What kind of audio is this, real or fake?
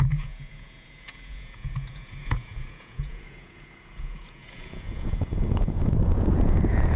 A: fake